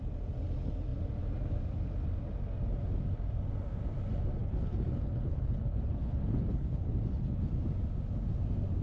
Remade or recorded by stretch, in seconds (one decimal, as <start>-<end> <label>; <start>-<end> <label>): 0.0-4.4 recorded; 4.4-7.5 remade; 7.5-8.8 recorded